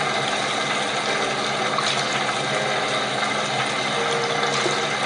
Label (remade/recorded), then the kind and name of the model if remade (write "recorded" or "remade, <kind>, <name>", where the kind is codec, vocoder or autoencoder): recorded